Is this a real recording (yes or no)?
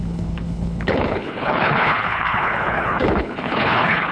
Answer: no